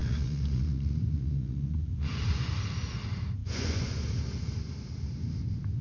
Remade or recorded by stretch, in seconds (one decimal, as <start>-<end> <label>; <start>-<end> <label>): 0.0-2.5 remade; 2.5-3.4 recorded; 3.4-4.0 remade; 4.0-5.8 recorded